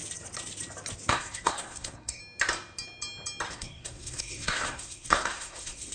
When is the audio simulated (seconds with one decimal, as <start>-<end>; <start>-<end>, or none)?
1.1-2.2; 3.5-5.9